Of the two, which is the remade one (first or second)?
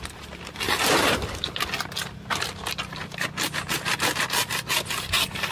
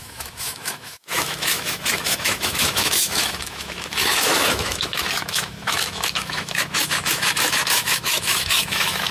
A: second